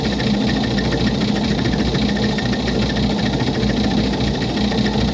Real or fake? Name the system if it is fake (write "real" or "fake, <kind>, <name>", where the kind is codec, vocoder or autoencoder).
real